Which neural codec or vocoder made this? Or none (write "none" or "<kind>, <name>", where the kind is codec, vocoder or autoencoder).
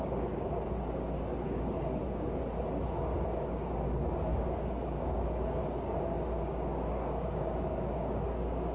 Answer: codec, DAC